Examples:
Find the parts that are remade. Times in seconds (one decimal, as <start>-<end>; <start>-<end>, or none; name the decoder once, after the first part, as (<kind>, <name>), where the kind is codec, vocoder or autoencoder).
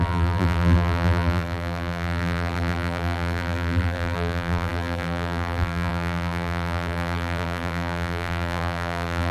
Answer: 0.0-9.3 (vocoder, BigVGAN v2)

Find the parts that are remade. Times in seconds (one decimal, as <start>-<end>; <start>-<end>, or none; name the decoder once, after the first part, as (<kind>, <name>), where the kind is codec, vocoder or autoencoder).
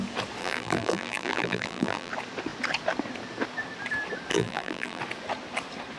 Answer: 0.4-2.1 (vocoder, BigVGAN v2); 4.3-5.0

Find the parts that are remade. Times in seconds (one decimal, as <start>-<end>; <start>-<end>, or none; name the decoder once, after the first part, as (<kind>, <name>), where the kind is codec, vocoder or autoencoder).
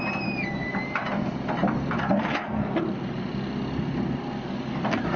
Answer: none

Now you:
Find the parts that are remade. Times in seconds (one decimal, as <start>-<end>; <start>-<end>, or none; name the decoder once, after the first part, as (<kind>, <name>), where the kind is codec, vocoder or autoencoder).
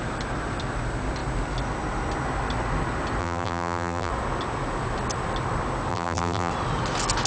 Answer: 3.2-4.1 (vocoder, BigVGAN v2); 5.9-6.5